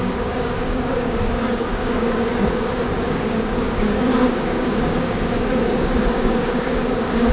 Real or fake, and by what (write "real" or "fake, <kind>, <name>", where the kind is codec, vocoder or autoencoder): fake, codec, DAC